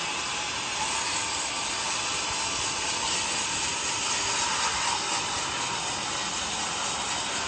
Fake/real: real